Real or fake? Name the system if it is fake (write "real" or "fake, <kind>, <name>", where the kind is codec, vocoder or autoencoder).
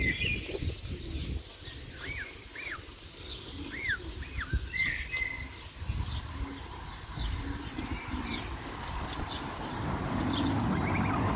real